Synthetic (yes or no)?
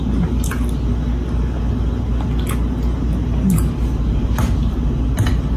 no